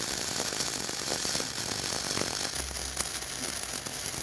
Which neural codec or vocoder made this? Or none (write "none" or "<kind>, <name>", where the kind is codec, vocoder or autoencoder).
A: none